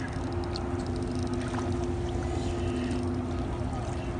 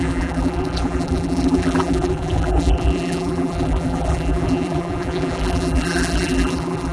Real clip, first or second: first